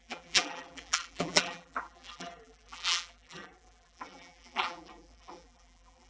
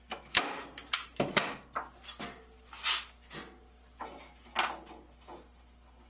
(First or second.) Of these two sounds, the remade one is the first